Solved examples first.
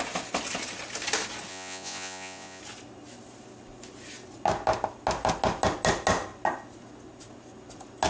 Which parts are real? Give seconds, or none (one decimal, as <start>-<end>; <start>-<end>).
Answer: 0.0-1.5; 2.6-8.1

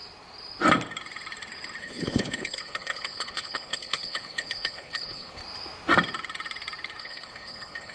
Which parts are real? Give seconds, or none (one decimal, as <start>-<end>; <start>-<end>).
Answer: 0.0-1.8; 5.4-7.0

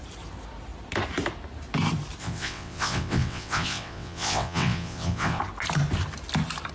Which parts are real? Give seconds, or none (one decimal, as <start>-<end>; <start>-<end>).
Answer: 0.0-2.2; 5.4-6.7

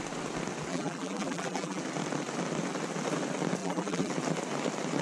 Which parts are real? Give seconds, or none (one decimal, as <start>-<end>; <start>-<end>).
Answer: 0.0-0.7; 1.8-3.6; 4.1-5.0